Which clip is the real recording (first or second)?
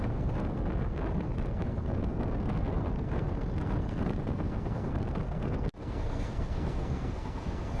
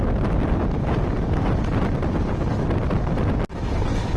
second